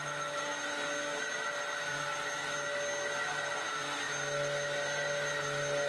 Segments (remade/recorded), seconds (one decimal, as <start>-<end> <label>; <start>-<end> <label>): 0.0-5.9 recorded